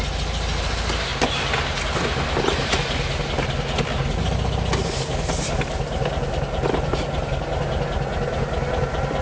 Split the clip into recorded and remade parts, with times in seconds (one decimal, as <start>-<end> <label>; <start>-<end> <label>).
0.0-9.2 recorded